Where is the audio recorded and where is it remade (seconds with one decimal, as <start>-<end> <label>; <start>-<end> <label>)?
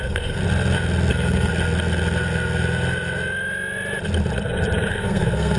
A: 0.0-0.4 remade; 0.4-1.1 recorded; 1.1-1.5 remade; 1.5-4.9 recorded; 4.9-5.6 remade